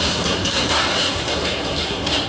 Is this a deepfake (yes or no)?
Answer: yes